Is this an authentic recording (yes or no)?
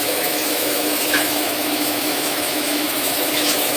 no